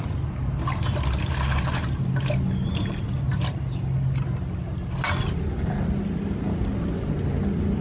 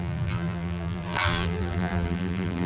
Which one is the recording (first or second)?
first